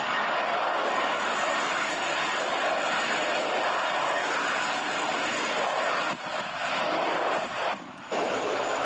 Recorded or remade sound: recorded